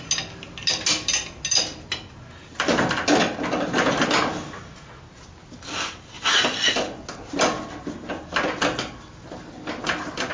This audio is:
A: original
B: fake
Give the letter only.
A